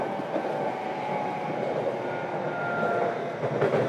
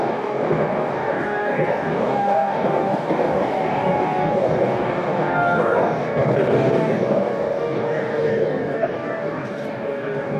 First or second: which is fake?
second